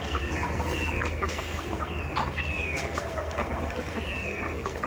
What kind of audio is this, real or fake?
fake